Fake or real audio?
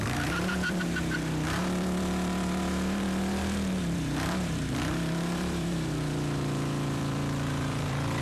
fake